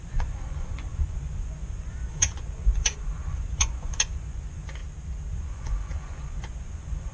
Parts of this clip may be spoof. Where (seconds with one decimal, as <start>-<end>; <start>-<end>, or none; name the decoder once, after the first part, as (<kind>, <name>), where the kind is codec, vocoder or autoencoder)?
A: 0.0-4.8 (vocoder, Vocos); 5.3-7.1